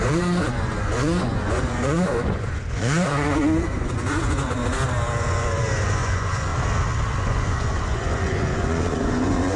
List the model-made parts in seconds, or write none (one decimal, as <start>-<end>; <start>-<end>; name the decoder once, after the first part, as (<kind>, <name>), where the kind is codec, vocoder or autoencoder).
0.0-4.6 (vocoder, Vocos); 5.2-6.5; 7.2-9.6

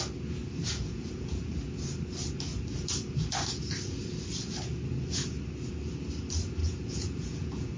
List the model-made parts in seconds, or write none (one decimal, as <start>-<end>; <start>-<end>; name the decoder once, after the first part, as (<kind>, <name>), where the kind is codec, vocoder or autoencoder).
0.7-1.5 (vocoder, Vocos); 6.6-7.8

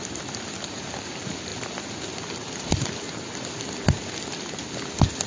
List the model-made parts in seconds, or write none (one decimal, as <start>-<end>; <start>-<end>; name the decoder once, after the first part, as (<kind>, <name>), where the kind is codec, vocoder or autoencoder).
none

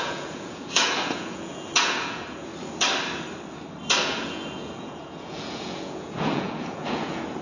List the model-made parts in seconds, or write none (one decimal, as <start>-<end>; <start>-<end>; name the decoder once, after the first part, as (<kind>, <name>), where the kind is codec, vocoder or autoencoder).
0.0-2.5 (vocoder, Vocos); 4.0-7.4

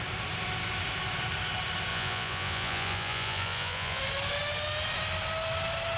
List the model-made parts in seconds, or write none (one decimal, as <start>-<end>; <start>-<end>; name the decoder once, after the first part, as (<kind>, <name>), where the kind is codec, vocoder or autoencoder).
1.9-4.0 (vocoder, Vocos)